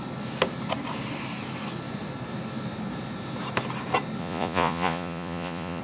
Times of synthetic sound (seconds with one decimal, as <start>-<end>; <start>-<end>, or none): 4.2-5.8